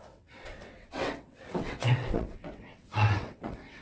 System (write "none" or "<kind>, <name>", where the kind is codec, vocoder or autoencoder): vocoder, WaveNeXt